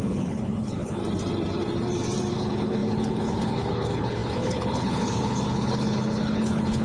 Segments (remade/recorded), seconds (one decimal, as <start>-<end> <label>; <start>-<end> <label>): 0.0-1.0 remade; 1.0-2.3 recorded; 2.3-6.8 remade